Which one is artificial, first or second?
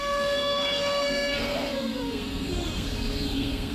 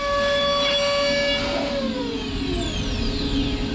first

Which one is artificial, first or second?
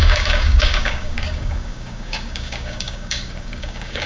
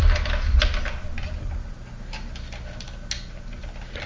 first